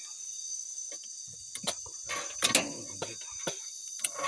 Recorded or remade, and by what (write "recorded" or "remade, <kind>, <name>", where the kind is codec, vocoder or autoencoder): recorded